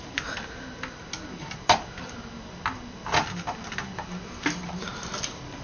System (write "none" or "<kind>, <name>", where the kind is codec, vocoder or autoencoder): none